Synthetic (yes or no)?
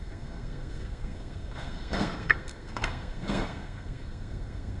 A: yes